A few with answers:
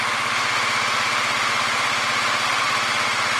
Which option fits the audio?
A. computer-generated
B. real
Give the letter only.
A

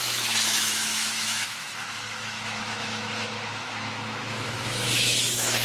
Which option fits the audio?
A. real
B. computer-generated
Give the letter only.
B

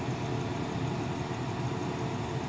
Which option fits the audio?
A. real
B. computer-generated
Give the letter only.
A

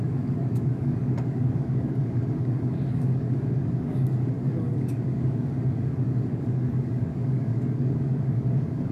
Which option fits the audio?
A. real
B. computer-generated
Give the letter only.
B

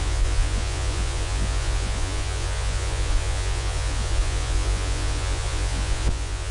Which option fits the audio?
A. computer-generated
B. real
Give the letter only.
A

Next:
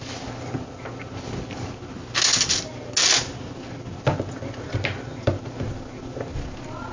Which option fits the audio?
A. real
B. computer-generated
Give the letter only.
A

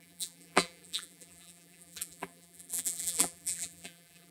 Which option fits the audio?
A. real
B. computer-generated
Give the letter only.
B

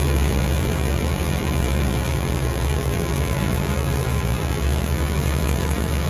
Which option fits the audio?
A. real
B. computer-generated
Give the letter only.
B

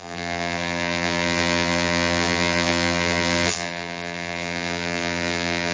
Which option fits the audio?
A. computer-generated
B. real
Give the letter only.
A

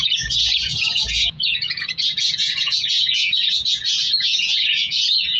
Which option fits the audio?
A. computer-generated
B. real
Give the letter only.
A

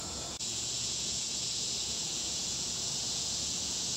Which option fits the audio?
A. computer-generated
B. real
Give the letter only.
A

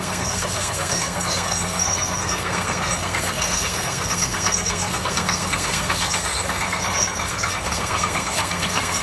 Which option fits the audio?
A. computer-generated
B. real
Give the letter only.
A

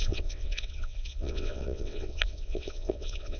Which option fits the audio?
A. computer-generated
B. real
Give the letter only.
A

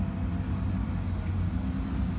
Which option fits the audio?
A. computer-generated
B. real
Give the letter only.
B